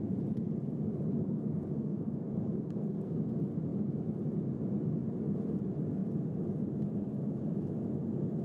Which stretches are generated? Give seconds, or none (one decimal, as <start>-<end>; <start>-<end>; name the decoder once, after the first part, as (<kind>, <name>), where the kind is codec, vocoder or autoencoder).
1.2-3.2 (codec, SNAC)